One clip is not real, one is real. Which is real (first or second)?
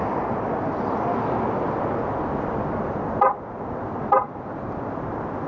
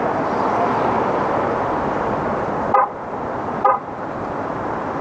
first